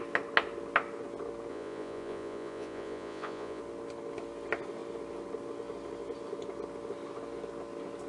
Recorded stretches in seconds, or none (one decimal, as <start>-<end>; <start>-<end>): 0.0-1.5; 3.6-8.1